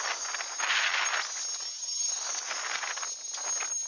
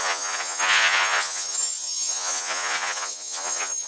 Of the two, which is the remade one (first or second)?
second